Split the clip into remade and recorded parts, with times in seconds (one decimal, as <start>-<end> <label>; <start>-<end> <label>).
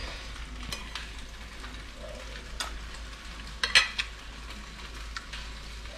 0.0-6.0 recorded